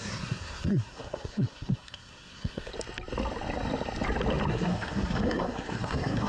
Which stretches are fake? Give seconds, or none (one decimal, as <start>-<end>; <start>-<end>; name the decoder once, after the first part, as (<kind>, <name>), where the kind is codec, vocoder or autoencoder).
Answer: 0.0-2.7 (codec, SNAC); 4.5-6.3